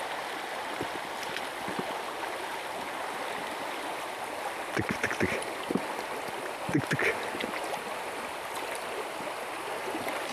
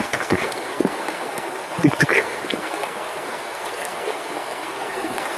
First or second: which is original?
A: first